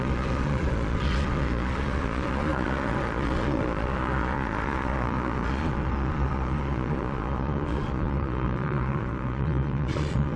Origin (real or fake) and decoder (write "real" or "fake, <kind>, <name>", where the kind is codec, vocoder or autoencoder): fake, vocoder, Vocos